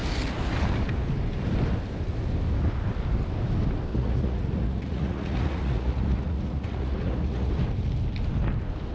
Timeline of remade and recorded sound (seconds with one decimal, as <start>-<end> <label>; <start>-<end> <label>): 0.0-3.9 recorded; 3.9-7.5 remade; 7.5-8.9 recorded